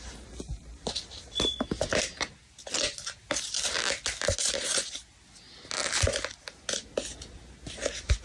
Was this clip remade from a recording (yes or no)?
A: no